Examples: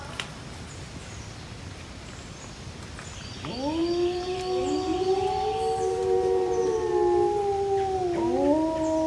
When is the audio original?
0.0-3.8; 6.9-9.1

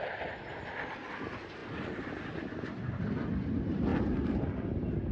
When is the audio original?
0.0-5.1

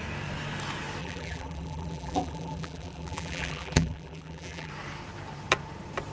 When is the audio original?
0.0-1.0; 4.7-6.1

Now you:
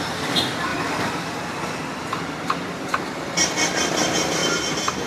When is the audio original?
4.4-5.1

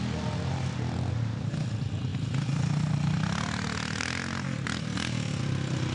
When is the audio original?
0.0-5.9

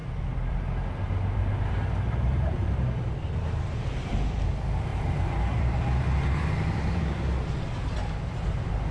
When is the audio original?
0.6-1.4; 4.1-4.9; 7.0-8.9

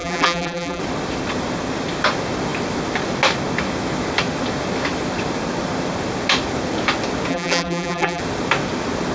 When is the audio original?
0.8-7.3; 8.2-9.1